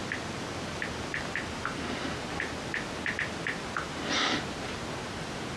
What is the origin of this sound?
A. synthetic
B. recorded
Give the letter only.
B